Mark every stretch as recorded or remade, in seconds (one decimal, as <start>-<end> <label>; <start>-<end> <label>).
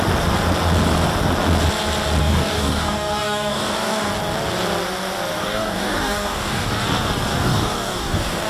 0.0-2.2 recorded; 2.2-4.1 remade; 4.1-5.4 recorded; 5.4-6.7 remade; 6.7-7.3 recorded; 7.3-8.5 remade